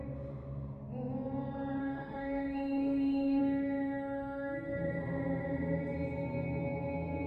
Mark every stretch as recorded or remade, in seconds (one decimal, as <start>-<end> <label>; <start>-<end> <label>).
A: 0.0-1.8 recorded; 1.8-3.4 remade; 3.4-7.3 recorded